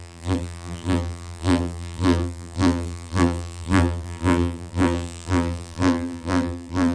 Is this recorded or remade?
remade